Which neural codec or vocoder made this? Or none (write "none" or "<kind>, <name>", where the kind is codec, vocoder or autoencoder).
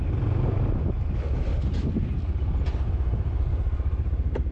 none